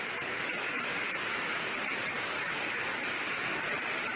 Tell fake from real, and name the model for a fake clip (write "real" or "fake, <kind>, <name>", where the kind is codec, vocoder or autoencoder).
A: fake, codec, DAC